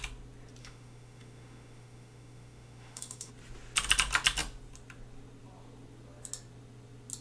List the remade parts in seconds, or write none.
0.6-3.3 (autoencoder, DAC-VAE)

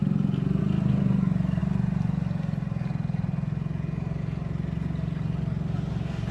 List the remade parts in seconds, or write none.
none

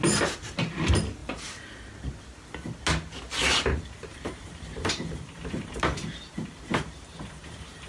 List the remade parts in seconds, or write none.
1.2-1.9 (vocoder, BigVGAN v2); 4.1-5.7; 6.7-7.9

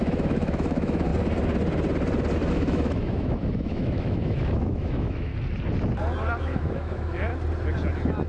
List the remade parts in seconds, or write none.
0.0-1.1 (autoencoder, DAC-VAE); 2.5-5.3; 6.4-7.3

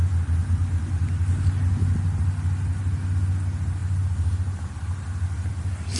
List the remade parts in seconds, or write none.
none

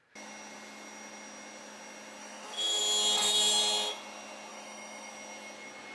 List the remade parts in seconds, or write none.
2.2-2.8 (autoencoder, DAC-VAE); 4.5-5.1